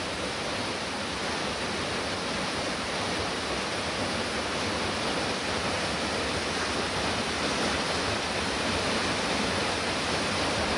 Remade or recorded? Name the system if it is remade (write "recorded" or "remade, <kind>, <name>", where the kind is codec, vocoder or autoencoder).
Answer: recorded